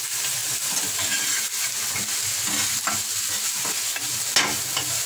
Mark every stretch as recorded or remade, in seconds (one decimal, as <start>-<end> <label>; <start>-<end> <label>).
0.0-5.1 recorded